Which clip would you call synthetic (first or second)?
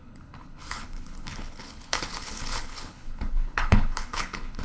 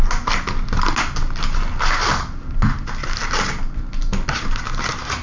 first